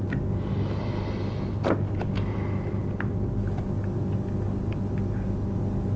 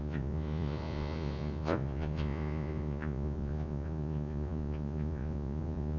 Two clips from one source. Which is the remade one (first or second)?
second